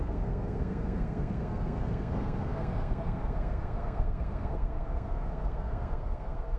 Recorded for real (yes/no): no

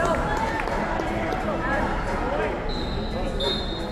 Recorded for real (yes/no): yes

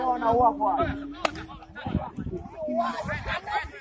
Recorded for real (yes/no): yes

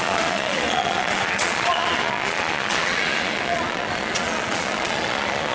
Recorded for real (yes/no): no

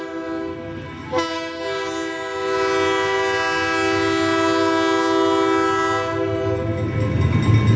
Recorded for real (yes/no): yes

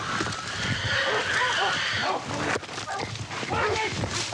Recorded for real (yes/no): yes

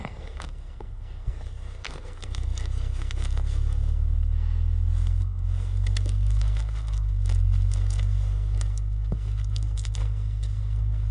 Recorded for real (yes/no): no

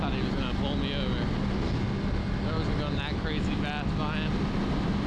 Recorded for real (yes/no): yes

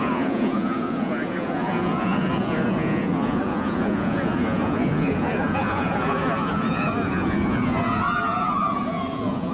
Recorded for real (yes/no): no